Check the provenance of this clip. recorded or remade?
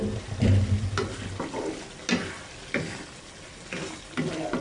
recorded